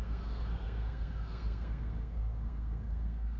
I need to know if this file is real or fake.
fake